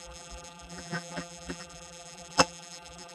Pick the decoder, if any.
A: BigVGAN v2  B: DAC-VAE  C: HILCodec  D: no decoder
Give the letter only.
A